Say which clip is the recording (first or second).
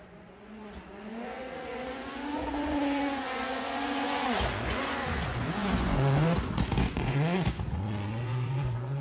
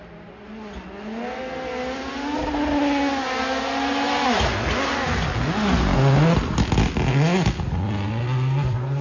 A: second